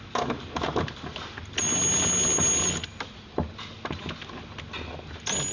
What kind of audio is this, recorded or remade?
recorded